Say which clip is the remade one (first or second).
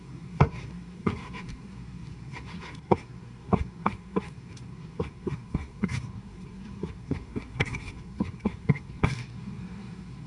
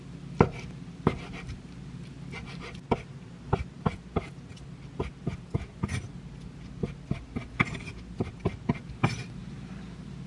first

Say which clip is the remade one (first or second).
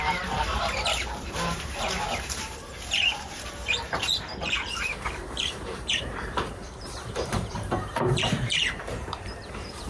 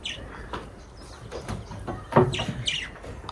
first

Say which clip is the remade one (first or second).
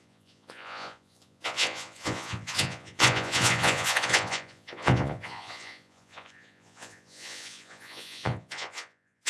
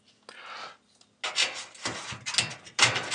first